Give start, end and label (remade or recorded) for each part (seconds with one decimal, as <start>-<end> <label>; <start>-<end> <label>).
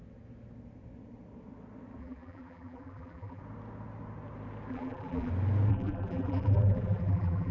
0.0-2.0 recorded; 2.0-3.4 remade; 3.4-4.7 recorded; 4.7-5.3 remade; 5.3-5.7 recorded; 5.7-7.5 remade